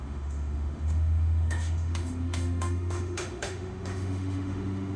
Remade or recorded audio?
remade